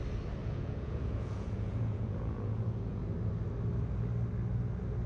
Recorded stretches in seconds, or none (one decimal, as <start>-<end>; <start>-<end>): 0.0-0.4; 3.0-5.1